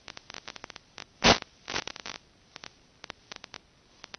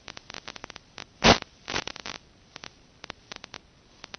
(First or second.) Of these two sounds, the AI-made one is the second